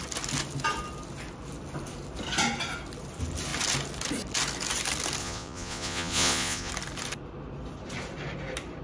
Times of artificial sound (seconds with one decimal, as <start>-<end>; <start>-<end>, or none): 5.2-6.7